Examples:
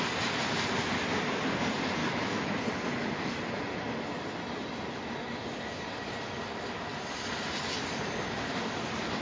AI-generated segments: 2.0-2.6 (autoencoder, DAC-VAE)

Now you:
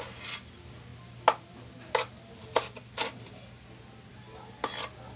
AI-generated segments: none